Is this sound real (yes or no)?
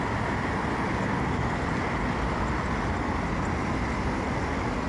yes